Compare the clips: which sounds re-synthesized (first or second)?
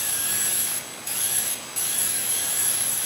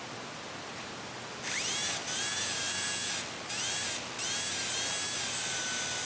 first